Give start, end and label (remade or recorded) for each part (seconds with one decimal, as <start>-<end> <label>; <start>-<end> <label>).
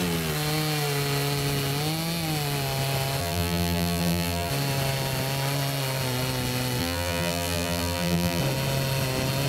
0.0-3.2 recorded; 3.2-4.5 remade; 4.5-6.8 recorded; 6.8-8.4 remade; 8.4-9.5 recorded